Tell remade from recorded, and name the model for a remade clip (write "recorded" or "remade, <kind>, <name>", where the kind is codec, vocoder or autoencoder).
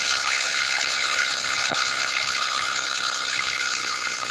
remade, codec, HILCodec